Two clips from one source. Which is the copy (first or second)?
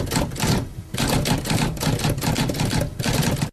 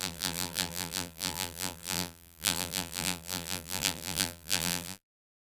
second